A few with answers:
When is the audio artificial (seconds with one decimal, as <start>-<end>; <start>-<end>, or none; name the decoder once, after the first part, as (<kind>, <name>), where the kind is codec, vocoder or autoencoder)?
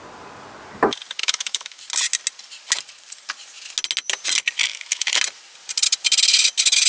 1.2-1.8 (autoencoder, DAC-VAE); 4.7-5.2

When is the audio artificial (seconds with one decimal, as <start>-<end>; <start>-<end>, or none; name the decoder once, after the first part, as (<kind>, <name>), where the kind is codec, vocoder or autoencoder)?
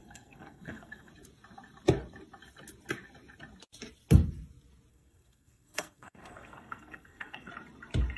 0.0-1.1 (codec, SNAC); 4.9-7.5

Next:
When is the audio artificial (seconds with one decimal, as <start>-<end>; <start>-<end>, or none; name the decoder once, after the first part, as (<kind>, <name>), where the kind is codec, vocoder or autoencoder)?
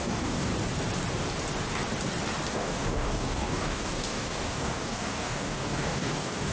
0.0-0.5 (codec, DAC); 2.5-6.5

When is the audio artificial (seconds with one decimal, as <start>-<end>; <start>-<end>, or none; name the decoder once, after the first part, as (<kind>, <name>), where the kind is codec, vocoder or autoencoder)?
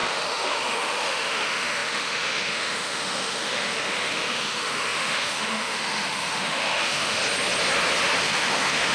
0.0-7.2 (autoencoder, DAC-VAE); 8.2-8.9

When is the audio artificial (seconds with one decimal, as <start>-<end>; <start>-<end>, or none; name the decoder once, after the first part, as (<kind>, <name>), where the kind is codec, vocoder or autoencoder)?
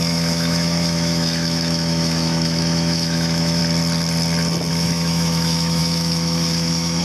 0.0-3.6 (autoencoder, DAC-VAE); 4.7-7.0